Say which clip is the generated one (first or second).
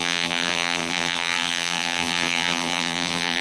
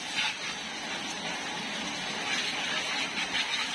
first